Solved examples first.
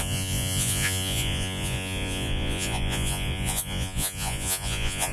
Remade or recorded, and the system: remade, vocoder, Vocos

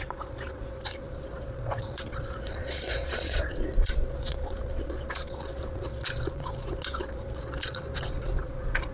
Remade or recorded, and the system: remade, vocoder, Vocos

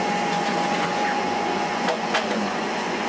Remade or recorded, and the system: remade, vocoder, Vocos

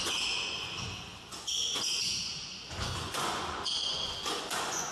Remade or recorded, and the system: remade, vocoder, Vocos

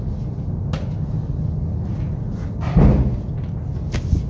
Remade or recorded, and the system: recorded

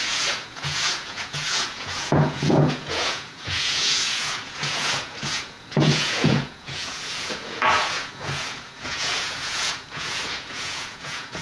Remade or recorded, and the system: remade, vocoder, Vocos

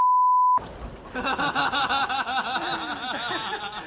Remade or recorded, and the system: recorded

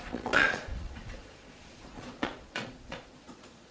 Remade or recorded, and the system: remade, vocoder, Vocos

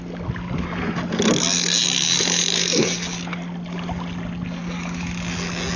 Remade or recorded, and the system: recorded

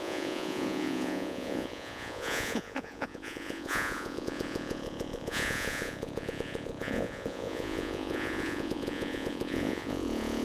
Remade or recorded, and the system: remade, vocoder, Vocos